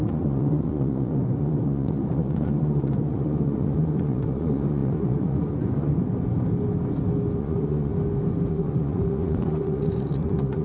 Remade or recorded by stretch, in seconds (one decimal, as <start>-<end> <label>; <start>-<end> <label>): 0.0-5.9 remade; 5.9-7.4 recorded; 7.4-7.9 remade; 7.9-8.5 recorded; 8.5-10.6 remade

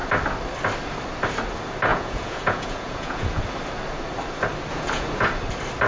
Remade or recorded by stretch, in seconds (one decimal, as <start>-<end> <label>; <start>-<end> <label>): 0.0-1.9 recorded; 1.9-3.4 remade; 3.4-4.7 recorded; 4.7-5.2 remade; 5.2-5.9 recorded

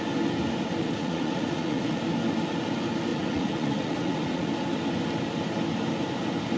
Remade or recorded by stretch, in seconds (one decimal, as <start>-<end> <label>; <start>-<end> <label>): 0.0-0.8 recorded; 0.8-2.0 remade; 2.0-3.1 recorded; 3.1-4.5 remade; 4.5-6.6 recorded